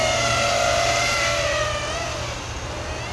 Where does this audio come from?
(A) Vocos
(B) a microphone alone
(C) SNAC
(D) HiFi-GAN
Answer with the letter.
B